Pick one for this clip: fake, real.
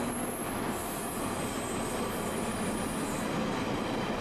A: real